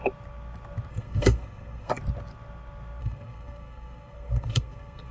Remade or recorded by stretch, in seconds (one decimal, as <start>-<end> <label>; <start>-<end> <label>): 0.0-0.9 recorded; 0.9-1.9 remade; 1.9-3.0 recorded; 3.0-5.1 remade